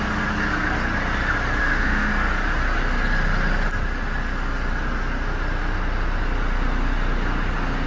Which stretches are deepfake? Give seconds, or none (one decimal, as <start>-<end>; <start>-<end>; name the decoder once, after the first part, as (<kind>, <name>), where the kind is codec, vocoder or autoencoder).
1.6-2.1 (autoencoder, DAC-VAE)